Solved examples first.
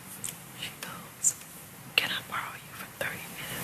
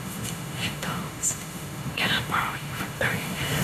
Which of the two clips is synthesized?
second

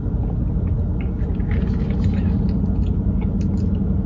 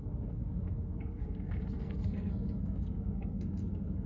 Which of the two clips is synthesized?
second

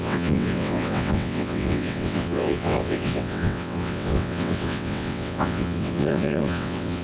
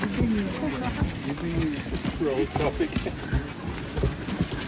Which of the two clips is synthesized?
first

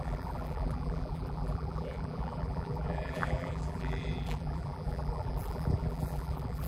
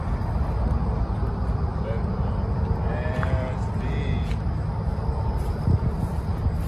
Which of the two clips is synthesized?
first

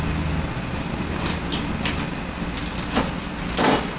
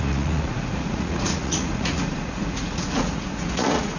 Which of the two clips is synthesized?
second